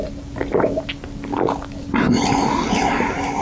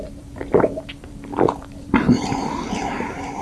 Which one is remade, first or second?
second